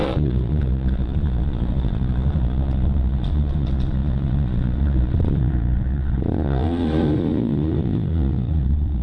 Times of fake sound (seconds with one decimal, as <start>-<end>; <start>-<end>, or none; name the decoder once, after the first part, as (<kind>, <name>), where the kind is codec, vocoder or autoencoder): 0.0-9.0 (vocoder, Vocos)